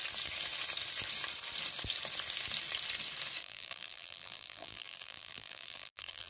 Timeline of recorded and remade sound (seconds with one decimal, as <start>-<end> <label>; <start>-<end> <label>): 0.0-3.4 recorded; 3.4-6.3 remade